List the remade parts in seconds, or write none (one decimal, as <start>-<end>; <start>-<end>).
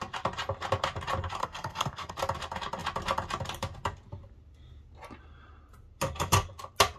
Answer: 1.4-2.1